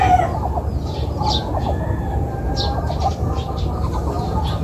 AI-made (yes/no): no